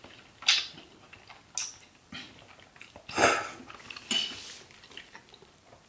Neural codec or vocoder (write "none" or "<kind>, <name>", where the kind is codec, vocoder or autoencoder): none